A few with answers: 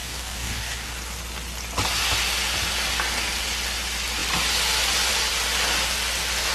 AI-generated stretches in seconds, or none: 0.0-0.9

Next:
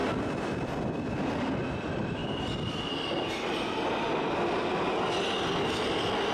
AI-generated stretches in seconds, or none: 2.2-4.8

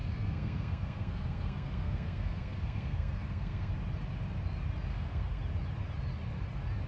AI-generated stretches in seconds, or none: 0.0-3.7; 4.9-5.4

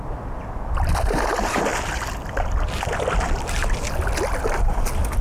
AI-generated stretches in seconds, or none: none

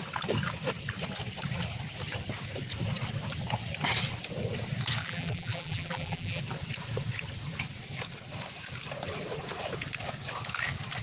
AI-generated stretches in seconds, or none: 5.0-6.4

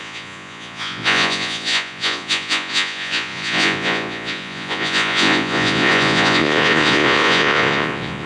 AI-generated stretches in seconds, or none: 0.0-8.3

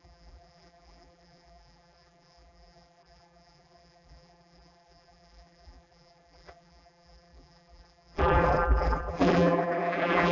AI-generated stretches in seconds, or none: 0.0-10.3